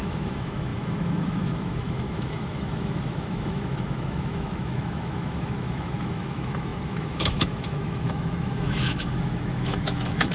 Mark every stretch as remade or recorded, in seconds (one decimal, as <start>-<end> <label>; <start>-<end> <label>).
0.0-10.3 remade

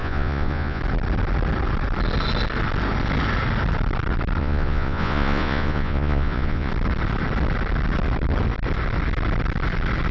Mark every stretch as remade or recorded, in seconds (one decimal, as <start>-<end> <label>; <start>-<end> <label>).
0.0-0.8 remade; 0.8-4.4 recorded; 4.4-6.7 remade; 6.7-10.1 recorded

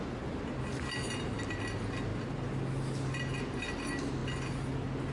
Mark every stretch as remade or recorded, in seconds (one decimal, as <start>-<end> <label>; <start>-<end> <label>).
0.0-5.1 recorded

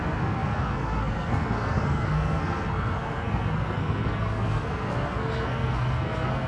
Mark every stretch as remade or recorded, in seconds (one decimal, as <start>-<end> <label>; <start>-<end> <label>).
0.0-6.5 remade